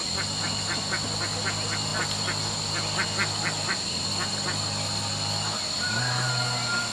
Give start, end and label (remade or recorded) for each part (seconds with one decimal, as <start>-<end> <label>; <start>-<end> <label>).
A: 0.0-6.9 recorded